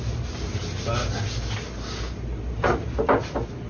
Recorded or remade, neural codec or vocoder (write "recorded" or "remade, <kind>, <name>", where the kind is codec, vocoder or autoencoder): recorded